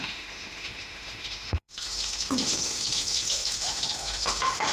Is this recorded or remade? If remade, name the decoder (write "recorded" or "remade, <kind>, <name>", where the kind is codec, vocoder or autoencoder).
remade, autoencoder, DAC-VAE